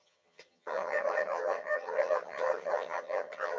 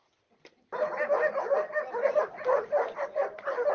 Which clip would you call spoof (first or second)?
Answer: first